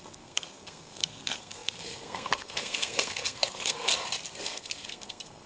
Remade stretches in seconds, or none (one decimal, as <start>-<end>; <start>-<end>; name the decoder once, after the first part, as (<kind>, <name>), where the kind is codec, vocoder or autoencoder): 0.0-3.9 (codec, SNAC); 4.4-5.5